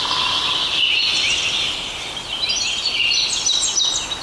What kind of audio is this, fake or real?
real